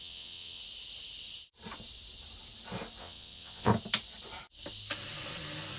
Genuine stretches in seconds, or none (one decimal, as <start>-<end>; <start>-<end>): 0.6-3.0; 3.7-5.8